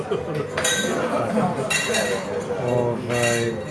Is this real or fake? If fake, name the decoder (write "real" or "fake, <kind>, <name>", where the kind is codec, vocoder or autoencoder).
real